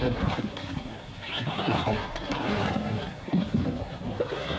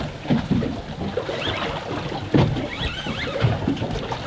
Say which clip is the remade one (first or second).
first